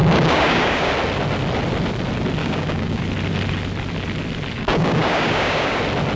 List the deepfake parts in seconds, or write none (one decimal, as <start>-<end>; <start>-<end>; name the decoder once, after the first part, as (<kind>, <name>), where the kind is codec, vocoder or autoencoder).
0.0-0.9 (codec, DAC); 2.4-3.0; 4.6-5.8